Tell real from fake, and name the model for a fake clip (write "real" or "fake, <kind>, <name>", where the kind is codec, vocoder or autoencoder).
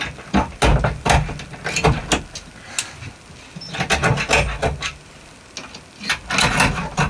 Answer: real